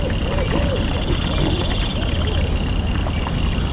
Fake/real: real